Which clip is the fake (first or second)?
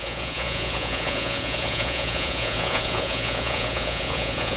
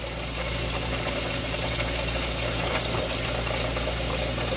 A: first